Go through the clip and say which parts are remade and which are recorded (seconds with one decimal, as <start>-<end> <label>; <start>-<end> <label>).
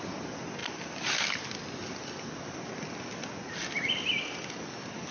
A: 0.0-5.1 recorded